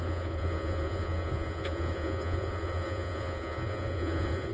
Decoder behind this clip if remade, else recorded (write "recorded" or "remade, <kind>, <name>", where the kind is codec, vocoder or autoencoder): remade, vocoder, Vocos